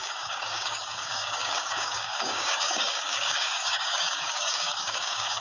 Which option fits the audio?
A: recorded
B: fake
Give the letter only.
B